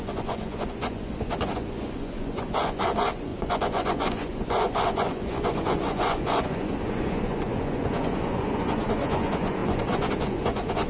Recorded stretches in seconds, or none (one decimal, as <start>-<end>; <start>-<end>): none